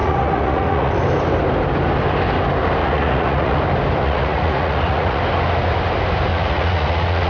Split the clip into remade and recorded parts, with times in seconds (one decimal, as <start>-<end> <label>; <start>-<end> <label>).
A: 0.0-0.9 remade; 0.9-2.8 recorded; 2.8-3.6 remade; 3.6-4.0 recorded; 4.0-5.2 remade; 5.2-6.3 recorded; 6.3-7.3 remade